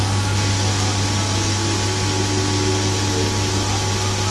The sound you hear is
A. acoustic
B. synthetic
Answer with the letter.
A